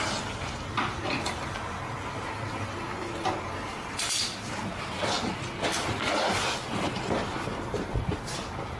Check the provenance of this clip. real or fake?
real